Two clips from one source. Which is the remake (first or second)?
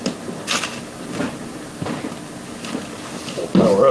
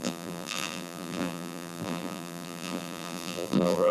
second